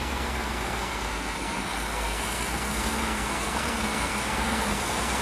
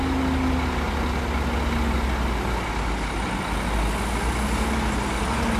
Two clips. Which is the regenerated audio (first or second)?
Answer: first